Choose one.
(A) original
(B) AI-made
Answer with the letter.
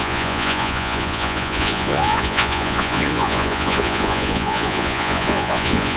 B